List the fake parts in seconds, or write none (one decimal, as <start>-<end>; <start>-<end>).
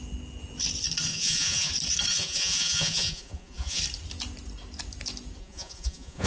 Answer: 1.1-1.7; 2.1-3.8; 5.4-6.3